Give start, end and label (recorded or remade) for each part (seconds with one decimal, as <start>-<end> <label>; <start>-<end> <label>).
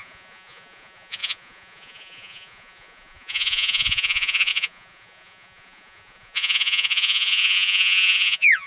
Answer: 0.0-8.7 remade